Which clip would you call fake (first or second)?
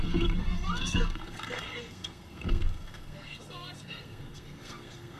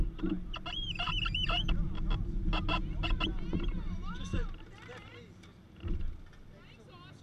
first